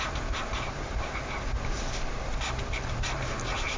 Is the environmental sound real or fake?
fake